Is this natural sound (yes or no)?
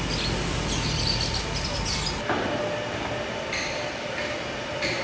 yes